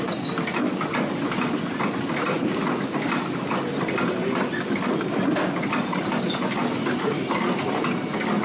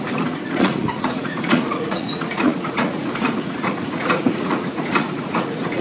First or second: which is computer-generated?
second